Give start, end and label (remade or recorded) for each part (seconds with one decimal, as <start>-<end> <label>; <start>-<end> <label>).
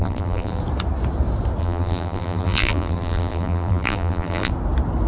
0.0-0.6 remade; 0.6-1.6 recorded; 1.6-4.5 remade; 4.5-5.1 recorded